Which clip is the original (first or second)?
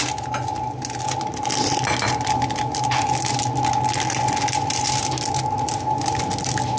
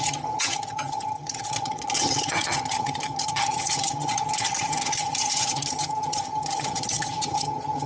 first